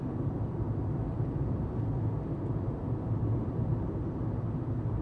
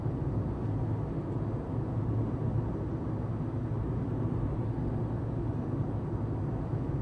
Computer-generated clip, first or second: first